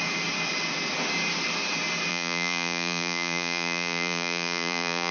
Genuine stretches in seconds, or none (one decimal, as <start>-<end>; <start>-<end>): 0.0-2.1